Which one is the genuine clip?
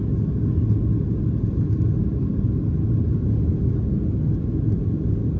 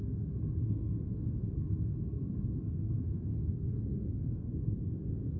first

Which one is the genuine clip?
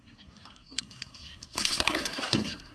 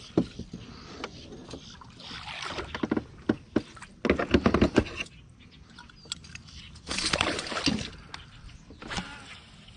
second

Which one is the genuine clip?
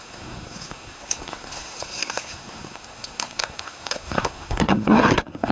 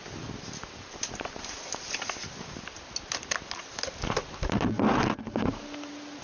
second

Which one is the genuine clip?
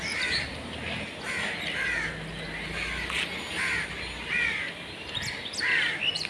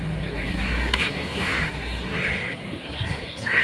first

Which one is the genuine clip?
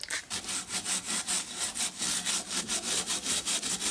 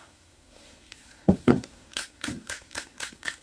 first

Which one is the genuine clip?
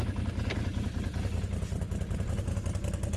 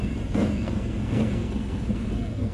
first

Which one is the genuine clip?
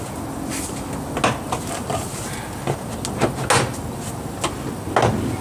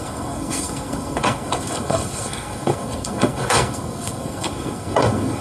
first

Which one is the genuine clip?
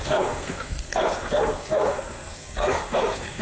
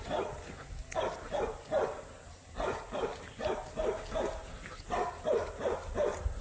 second